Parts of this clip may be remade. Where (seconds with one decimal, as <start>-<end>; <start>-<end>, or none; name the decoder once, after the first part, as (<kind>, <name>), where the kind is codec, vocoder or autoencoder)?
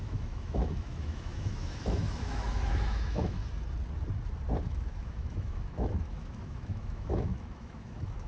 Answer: 0.0-3.4 (autoencoder, DAC-VAE); 4.6-8.3